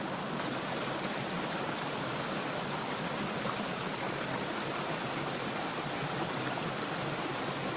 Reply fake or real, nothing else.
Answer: fake